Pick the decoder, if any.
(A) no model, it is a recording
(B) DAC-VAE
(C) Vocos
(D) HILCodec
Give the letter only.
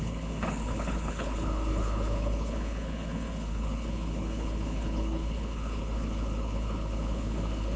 D